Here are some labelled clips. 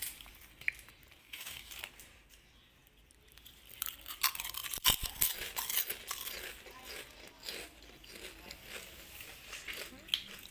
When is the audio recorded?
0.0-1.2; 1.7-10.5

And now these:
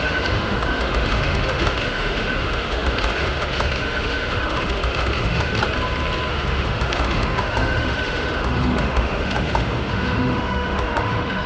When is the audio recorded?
5.5-6.3

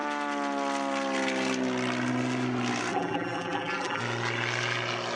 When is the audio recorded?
0.0-2.9; 4.0-5.2

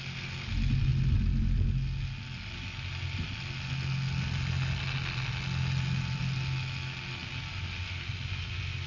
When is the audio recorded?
0.0-8.9

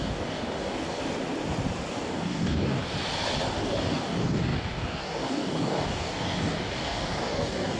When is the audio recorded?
1.0-1.9; 2.8-3.6

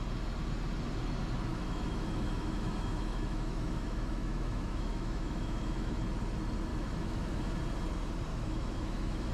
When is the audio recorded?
0.0-1.5; 6.0-6.7; 7.6-8.3